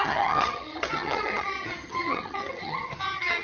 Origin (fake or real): fake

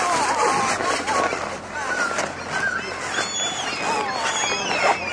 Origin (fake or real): real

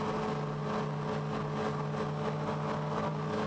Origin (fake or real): real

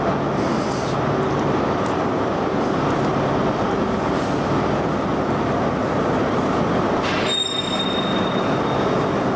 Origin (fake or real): real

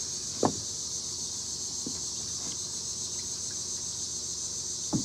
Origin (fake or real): real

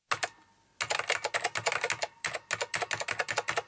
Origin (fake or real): real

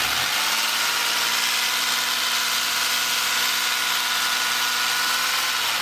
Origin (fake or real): real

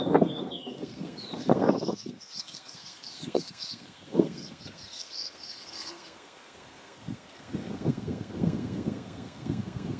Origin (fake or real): fake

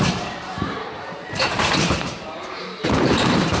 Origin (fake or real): fake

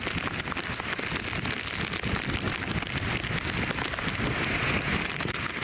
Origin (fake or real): real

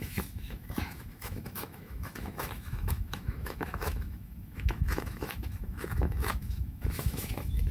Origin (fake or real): fake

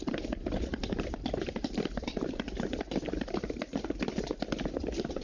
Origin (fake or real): real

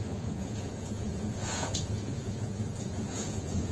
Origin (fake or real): fake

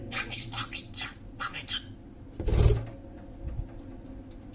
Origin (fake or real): real